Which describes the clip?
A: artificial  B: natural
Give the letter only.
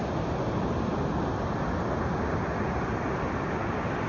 B